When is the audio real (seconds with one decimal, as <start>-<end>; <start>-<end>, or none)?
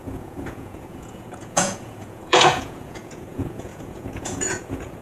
none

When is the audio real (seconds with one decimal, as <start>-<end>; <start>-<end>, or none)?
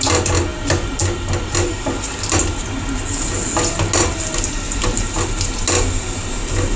0.0-6.8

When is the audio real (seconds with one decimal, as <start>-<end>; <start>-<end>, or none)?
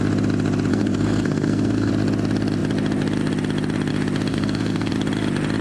0.0-0.7; 1.9-4.3; 4.9-5.6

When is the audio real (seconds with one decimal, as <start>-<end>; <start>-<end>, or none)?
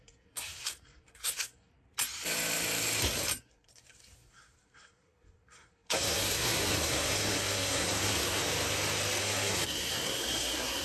1.7-3.4; 8.4-9.2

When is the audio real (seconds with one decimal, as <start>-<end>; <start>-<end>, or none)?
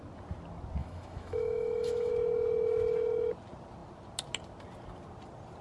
0.0-0.8; 2.1-5.6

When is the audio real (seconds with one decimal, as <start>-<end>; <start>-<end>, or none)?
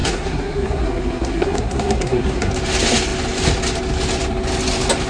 2.5-5.1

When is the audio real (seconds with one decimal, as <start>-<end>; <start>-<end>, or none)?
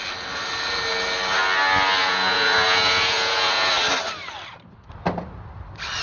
0.0-2.0; 3.7-6.0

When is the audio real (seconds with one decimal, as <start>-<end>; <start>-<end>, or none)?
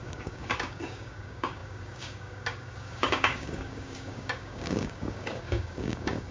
none